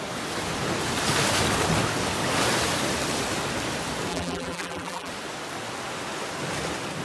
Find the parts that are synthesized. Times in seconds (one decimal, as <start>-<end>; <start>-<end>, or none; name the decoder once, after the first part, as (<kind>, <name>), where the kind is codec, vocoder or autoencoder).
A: 4.1-5.1 (vocoder, BigVGAN v2)